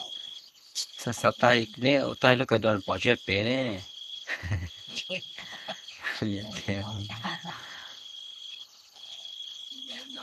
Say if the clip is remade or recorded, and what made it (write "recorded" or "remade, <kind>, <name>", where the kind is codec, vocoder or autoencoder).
remade, codec, HILCodec